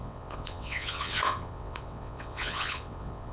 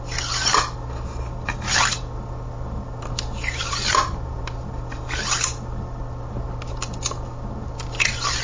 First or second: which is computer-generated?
first